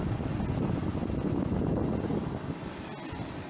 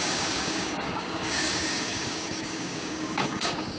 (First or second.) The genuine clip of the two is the first